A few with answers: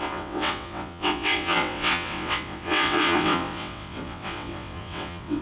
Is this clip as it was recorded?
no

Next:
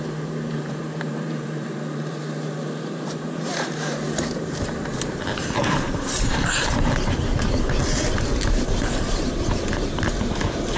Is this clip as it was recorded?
no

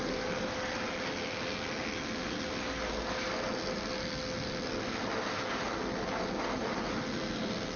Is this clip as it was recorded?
yes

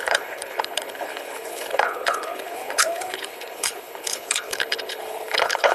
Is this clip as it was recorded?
no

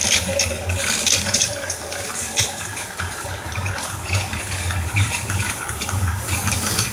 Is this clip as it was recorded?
no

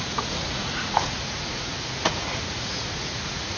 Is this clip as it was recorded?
no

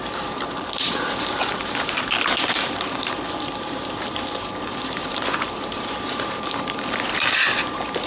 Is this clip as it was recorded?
no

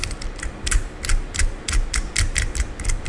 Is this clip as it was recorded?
yes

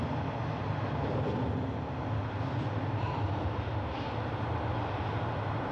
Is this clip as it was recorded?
yes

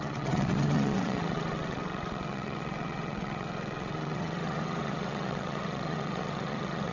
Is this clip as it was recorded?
no